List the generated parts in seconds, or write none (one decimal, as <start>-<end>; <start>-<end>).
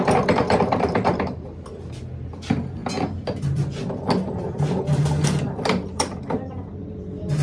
none